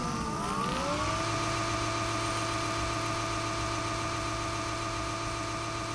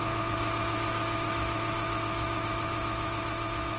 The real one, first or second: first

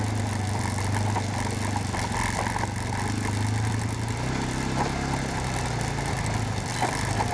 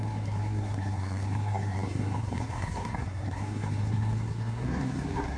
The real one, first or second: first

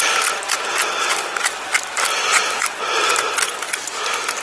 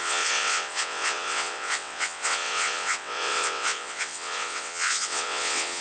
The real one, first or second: first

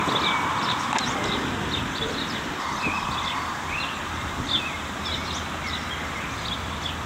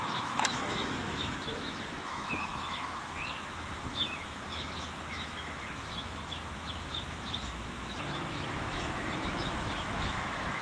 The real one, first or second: first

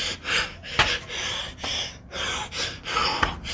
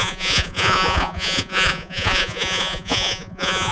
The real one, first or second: first